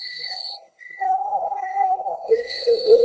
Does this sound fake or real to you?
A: fake